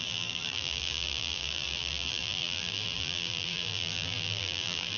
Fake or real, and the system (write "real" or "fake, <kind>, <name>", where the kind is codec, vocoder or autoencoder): fake, vocoder, BigVGAN v2